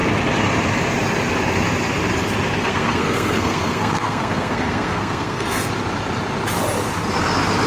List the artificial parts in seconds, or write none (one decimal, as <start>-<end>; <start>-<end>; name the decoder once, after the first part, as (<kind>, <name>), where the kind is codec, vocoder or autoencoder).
2.6-5.7 (codec, SNAC)